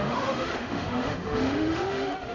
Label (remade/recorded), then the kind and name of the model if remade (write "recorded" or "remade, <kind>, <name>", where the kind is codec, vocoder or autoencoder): remade, autoencoder, DAC-VAE